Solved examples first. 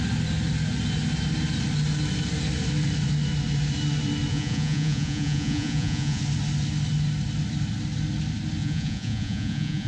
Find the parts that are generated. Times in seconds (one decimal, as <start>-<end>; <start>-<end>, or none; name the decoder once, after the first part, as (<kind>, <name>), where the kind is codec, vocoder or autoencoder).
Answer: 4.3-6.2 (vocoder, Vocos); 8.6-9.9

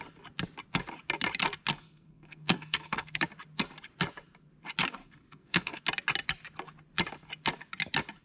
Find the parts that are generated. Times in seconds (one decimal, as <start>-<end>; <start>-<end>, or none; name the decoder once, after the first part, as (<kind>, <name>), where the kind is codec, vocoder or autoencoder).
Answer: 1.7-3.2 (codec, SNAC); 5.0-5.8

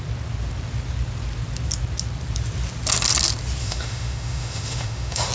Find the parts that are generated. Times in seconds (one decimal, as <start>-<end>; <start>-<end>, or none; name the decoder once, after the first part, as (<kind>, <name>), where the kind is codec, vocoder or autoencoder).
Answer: 3.6-5.3 (autoencoder, DAC-VAE)